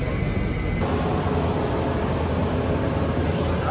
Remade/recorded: recorded